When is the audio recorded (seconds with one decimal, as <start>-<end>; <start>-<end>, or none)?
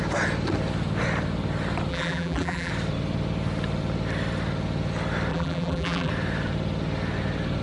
0.0-1.9; 2.7-5.3; 6.1-7.6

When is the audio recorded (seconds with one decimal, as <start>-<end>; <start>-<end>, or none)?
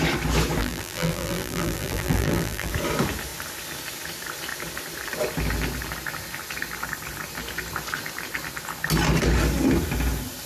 0.0-0.6; 2.7-10.5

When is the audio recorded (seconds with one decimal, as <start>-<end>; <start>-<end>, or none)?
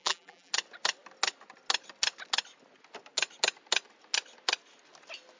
0.5-5.4